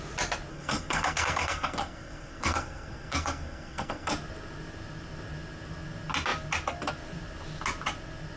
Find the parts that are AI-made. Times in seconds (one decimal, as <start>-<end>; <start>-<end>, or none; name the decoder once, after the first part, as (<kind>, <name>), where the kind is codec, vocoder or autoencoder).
0.5-4.1 (codec, SNAC)